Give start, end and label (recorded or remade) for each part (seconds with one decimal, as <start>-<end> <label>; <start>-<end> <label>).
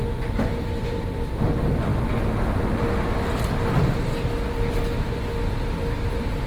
0.0-6.5 recorded